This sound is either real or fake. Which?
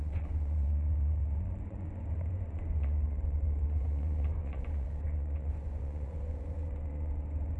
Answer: fake